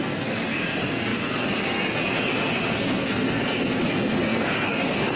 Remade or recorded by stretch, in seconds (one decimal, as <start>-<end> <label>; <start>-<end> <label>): 0.0-5.2 remade